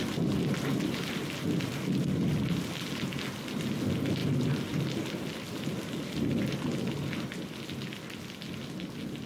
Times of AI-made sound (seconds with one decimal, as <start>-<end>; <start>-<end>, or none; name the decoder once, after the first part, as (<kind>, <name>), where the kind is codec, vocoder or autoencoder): none